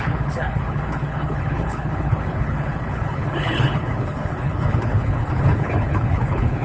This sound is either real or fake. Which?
fake